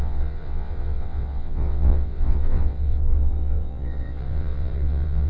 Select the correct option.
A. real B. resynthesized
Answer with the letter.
B